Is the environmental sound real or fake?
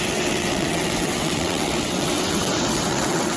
fake